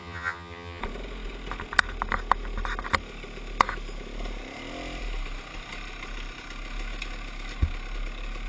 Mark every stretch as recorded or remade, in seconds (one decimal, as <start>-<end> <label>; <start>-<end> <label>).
0.0-0.8 remade; 0.8-8.5 recorded